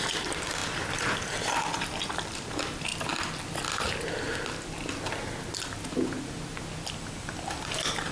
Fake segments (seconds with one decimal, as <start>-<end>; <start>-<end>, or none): 0.0-2.9; 6.9-8.1